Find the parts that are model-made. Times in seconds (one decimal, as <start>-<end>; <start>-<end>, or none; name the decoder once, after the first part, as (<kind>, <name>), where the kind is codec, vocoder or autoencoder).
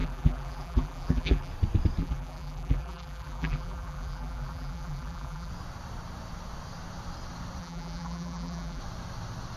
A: 0.0-1.5 (vocoder, BigVGAN v2); 2.0-5.5; 7.6-8.8